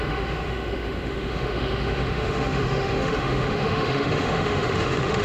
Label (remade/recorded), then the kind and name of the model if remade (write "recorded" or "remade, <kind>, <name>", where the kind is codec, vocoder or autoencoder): remade, autoencoder, DAC-VAE